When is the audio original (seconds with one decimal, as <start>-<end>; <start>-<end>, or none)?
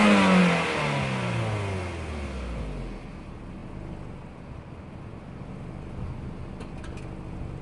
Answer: 0.0-7.6